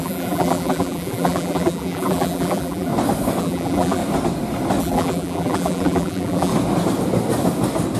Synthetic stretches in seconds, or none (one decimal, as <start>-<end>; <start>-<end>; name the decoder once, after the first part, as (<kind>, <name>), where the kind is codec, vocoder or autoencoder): 0.0-2.9 (vocoder, BigVGAN v2); 3.4-4.0; 4.8-6.5

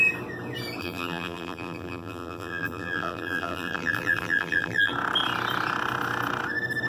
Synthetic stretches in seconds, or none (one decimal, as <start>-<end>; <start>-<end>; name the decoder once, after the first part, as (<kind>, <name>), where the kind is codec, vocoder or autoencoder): 0.8-4.9 (vocoder, BigVGAN v2)

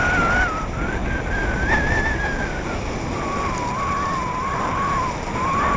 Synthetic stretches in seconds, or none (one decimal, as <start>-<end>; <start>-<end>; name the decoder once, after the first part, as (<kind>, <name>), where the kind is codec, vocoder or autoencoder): none

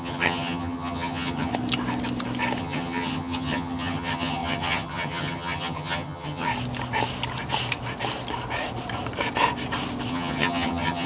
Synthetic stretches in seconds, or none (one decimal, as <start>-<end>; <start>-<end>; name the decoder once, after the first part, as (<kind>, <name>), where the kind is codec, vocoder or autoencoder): 0.0-1.5 (vocoder, HiFi-GAN); 2.6-6.5; 10.1-11.1

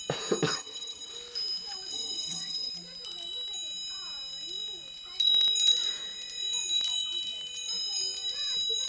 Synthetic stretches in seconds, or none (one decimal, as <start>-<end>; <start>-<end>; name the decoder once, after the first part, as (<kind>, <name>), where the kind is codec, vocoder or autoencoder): 0.5-1.1 (vocoder, HiFi-GAN); 1.9-2.7